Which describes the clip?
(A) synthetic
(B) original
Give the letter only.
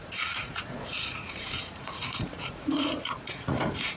A